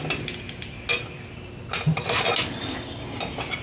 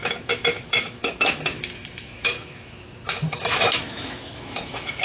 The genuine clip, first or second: first